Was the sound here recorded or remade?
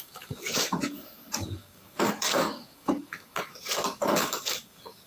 remade